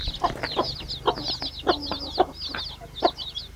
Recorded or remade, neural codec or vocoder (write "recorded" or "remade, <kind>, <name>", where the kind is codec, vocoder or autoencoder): recorded